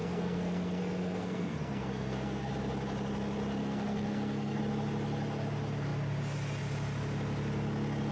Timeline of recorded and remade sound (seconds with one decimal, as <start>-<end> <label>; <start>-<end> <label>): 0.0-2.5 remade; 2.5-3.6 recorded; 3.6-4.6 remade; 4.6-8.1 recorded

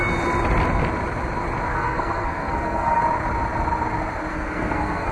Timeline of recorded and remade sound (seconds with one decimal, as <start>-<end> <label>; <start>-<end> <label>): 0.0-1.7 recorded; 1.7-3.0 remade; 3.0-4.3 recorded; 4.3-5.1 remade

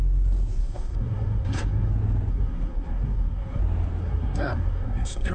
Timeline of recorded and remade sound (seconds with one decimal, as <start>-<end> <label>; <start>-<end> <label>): 0.0-0.6 recorded; 0.6-1.9 remade; 1.9-2.3 recorded; 2.3-3.6 remade; 3.6-4.0 recorded; 4.0-5.3 remade

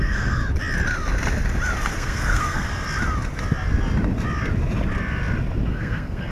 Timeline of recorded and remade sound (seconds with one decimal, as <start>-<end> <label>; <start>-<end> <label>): 0.0-0.4 remade; 0.4-1.9 recorded; 1.9-2.7 remade; 2.7-5.7 recorded; 5.7-6.3 remade